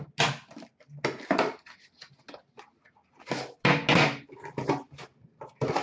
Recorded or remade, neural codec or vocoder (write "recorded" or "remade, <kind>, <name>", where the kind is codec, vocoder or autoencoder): recorded